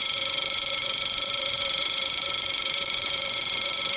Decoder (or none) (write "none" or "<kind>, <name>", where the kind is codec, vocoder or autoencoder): vocoder, Vocos